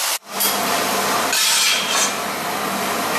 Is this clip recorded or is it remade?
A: recorded